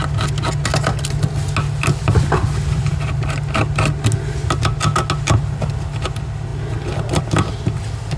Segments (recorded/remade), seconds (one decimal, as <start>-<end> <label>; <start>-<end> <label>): 0.0-8.2 recorded